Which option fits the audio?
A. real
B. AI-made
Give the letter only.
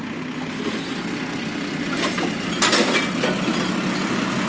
A